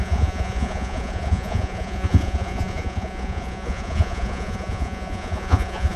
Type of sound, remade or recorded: remade